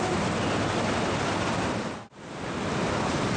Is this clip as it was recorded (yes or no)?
yes